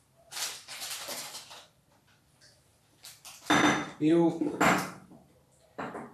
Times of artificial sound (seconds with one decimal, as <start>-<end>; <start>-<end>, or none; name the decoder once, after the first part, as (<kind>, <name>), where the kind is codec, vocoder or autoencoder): 0.7-2.2 (vocoder, BigVGAN v2)